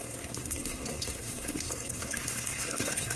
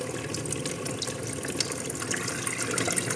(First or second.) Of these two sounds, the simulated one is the first